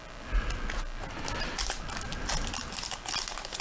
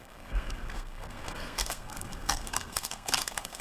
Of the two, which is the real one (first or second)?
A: first